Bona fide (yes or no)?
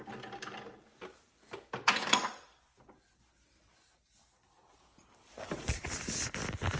yes